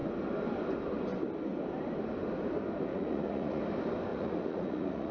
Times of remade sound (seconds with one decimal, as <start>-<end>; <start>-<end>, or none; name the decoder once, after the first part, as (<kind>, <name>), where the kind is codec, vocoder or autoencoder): 2.9-3.6 (vocoder, Vocos); 4.1-5.1